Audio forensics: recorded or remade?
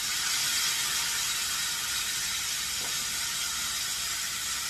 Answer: recorded